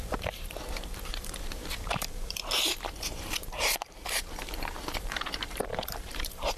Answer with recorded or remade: remade